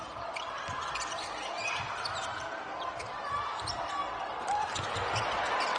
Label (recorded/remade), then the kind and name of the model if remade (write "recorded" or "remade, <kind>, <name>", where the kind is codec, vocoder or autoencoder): recorded